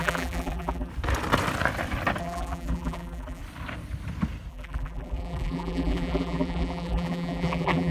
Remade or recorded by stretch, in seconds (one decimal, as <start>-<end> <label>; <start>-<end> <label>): 0.0-0.9 remade; 0.9-2.2 recorded; 2.2-3.4 remade; 3.4-4.5 recorded; 4.5-7.9 remade

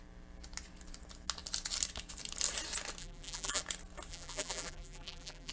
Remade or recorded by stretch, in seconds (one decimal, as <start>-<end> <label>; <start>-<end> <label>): 0.0-3.0 recorded; 3.0-3.6 remade; 3.6-4.1 recorded; 4.1-5.5 remade

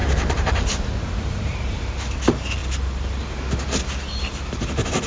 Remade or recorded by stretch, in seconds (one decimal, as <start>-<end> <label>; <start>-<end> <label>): 0.0-1.9 remade; 1.9-5.1 recorded

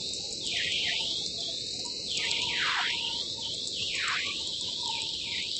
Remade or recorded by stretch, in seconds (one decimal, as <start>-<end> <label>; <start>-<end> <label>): 0.0-5.6 recorded

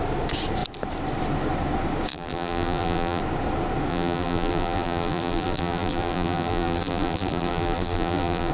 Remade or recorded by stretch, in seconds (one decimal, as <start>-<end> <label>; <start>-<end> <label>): 0.0-2.1 recorded; 2.1-3.2 remade; 3.2-3.9 recorded; 3.9-8.5 remade

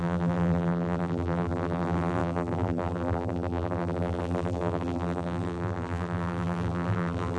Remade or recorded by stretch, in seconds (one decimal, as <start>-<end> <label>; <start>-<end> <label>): 0.0-7.4 remade

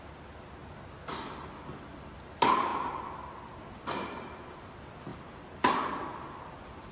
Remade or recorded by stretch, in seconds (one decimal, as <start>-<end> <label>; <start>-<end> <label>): 0.0-6.9 recorded